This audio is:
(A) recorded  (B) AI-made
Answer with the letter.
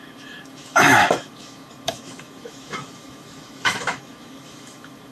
B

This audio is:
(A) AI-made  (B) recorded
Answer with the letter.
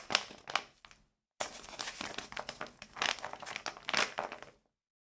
B